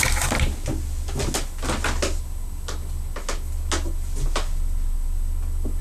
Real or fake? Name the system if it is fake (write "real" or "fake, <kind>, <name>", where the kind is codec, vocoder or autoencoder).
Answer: real